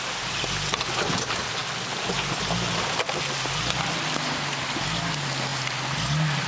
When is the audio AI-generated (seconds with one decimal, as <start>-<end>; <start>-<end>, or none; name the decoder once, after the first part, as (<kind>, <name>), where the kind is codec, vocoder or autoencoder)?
none